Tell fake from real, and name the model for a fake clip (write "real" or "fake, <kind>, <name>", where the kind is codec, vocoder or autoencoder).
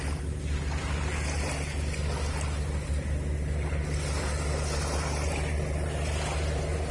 real